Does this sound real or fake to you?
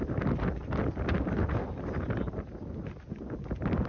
real